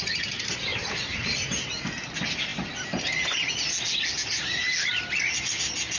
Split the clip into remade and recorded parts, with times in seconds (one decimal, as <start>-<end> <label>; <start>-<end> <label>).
0.0-0.7 recorded; 0.7-1.6 remade; 1.6-6.0 recorded